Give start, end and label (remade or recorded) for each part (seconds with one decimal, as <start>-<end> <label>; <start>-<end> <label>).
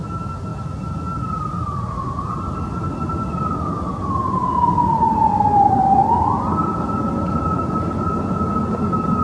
0.0-0.5 recorded; 0.5-5.3 remade; 5.3-6.0 recorded; 6.0-7.1 remade; 7.1-9.2 recorded